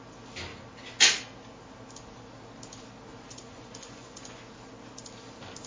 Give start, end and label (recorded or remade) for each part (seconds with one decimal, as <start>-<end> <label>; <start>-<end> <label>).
0.0-3.3 recorded; 3.3-4.4 remade; 4.4-5.7 recorded